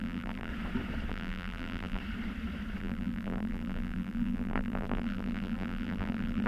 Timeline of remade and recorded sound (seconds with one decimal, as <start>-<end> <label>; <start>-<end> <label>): 0.0-0.5 remade; 0.5-1.1 recorded; 1.1-2.0 remade; 2.0-2.8 recorded; 2.8-6.5 remade